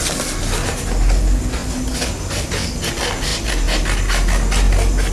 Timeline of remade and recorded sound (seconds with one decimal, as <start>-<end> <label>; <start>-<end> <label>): 0.0-5.1 recorded